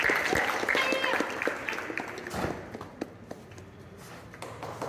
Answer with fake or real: real